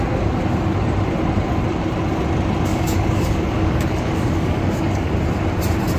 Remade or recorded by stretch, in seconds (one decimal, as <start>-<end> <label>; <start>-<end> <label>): 0.0-2.7 recorded; 2.7-5.1 remade; 5.1-6.0 recorded